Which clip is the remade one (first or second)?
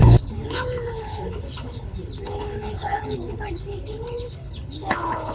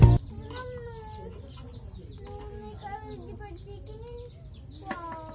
first